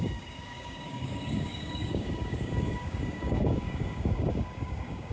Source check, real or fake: fake